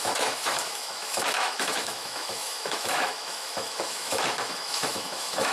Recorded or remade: remade